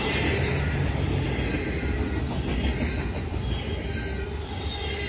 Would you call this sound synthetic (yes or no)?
no